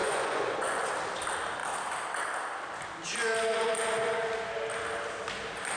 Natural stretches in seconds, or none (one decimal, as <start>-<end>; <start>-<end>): 0.9-5.8